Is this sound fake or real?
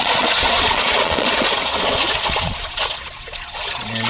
fake